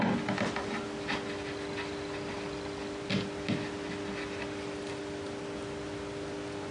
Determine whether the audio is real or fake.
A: real